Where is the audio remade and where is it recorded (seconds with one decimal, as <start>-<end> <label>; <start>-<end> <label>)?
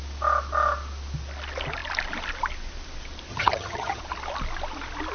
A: 0.0-3.3 recorded; 3.3-4.0 remade; 4.0-5.1 recorded